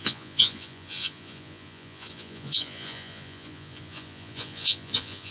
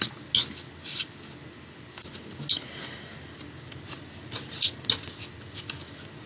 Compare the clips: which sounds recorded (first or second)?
second